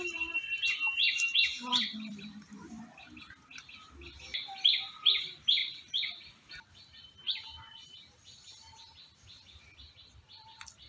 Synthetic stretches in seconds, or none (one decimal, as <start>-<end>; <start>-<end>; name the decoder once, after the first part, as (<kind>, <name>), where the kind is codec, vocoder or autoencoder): 1.7-2.8 (vocoder, BigVGAN v2); 5.6-6.5